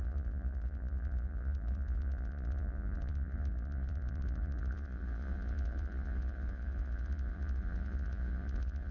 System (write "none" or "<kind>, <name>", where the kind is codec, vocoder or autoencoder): vocoder, Vocos